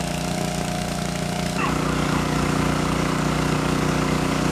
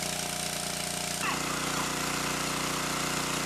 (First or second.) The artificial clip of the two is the first